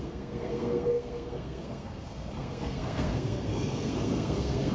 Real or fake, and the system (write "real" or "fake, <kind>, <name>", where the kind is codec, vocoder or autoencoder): fake, codec, SNAC